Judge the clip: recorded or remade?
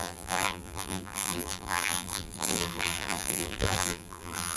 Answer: remade